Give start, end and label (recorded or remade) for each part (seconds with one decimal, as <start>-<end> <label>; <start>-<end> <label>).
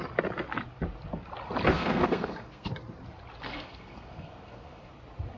0.0-1.7 recorded; 1.7-2.7 remade; 2.7-3.5 recorded; 3.5-4.9 remade; 4.9-5.4 recorded